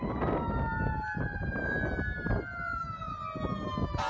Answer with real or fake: real